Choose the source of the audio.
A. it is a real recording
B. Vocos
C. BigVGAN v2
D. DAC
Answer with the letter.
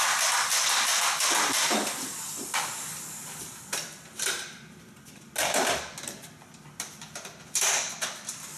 C